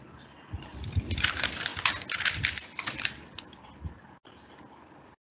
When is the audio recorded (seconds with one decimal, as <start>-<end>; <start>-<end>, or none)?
0.0-5.3